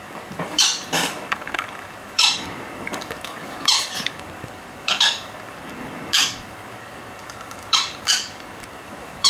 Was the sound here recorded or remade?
remade